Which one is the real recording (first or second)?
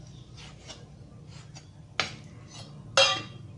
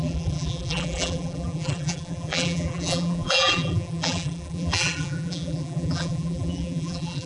first